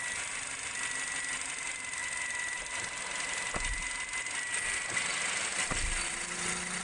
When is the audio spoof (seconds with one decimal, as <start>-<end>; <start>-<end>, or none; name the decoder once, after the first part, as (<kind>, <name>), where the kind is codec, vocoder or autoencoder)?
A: none